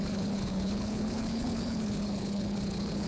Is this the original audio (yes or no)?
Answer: no